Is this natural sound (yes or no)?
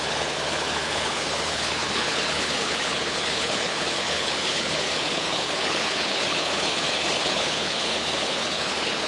no